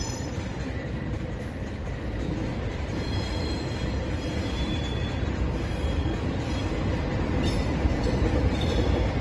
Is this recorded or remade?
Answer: recorded